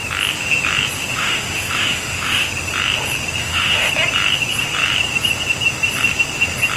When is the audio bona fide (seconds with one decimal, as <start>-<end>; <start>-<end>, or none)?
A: 0.0-1.1; 2.5-3.4; 3.9-6.8